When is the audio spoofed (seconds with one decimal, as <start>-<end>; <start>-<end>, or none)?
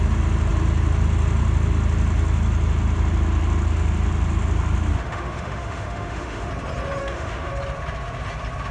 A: 4.9-6.5; 7.0-7.5